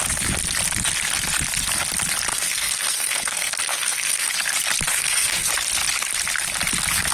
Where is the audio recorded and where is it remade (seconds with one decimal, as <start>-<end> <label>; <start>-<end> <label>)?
0.0-2.3 recorded; 2.3-4.3 remade; 4.3-4.9 recorded; 4.9-5.5 remade; 5.5-7.1 recorded